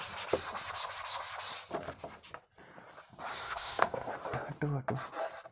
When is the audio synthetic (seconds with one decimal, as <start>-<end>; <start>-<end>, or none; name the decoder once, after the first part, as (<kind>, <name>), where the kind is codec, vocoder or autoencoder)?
3.3-4.1 (codec, SNAC)